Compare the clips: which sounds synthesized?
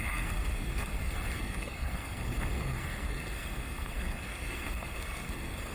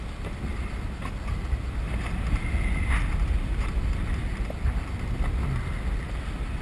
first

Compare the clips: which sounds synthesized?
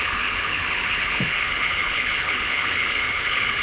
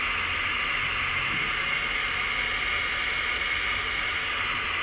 first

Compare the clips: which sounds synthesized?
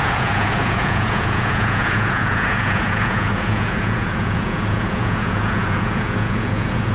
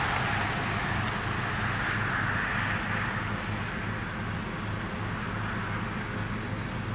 first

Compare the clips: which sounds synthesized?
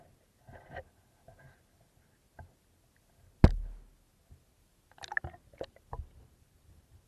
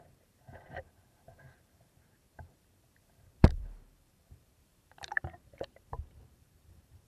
second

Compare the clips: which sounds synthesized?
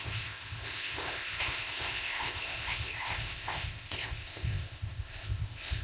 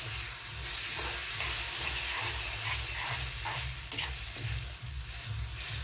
first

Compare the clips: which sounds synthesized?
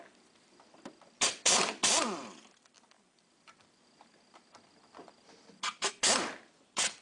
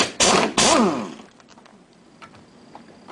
first